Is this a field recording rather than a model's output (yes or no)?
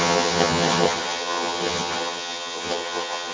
no